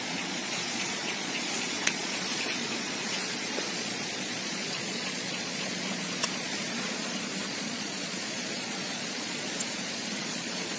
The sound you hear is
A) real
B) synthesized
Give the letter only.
B